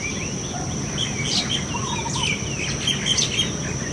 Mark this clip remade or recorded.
recorded